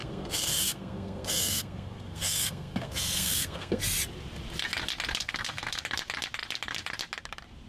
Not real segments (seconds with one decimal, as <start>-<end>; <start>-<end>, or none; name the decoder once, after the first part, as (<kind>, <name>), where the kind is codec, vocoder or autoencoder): 0.0-3.8 (codec, SNAC); 5.2-5.8